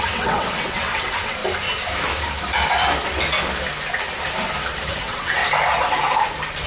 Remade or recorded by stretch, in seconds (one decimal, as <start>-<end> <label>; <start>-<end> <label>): 0.0-1.4 remade; 1.4-4.9 recorded; 4.9-5.4 remade; 5.4-6.7 recorded